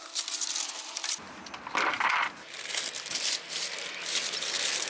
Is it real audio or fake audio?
real